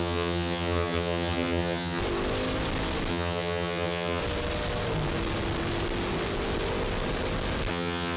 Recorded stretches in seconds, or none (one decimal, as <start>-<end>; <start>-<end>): 2.0-3.1; 4.2-7.7